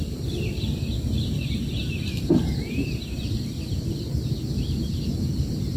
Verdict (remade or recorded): remade